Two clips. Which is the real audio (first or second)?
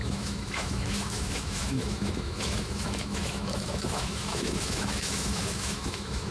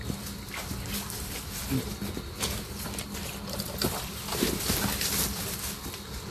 second